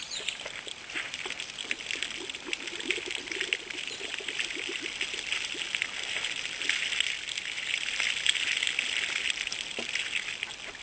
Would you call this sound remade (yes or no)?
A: no